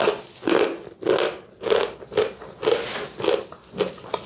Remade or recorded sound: recorded